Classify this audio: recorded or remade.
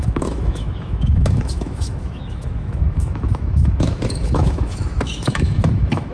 remade